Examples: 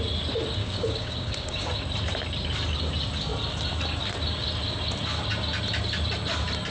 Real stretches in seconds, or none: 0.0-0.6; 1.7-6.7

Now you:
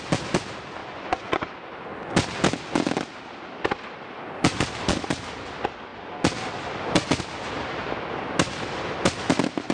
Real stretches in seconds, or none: 0.0-0.8; 1.5-9.7

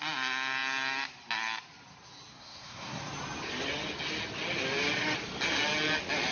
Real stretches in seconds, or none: 0.0-2.3; 3.0-6.3

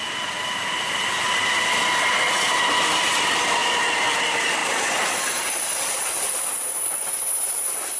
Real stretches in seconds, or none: 0.0-8.0